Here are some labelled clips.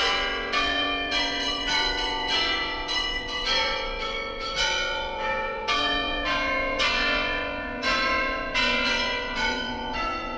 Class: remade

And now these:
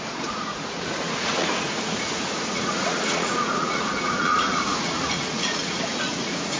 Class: remade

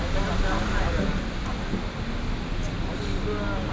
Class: recorded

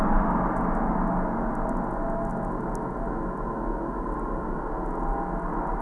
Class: recorded